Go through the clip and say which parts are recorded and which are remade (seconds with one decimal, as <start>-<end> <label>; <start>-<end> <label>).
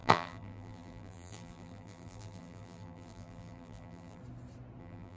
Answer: 0.0-4.2 remade; 4.2-4.8 recorded; 4.8-5.2 remade